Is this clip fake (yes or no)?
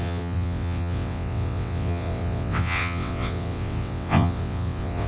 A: yes